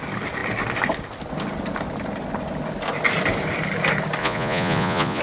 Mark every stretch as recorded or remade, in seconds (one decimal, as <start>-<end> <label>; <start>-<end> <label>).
0.0-4.2 recorded; 4.2-5.2 remade